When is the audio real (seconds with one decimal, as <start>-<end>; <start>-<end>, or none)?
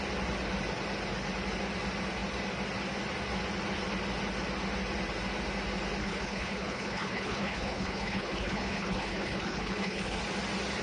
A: 0.0-6.0; 10.2-10.8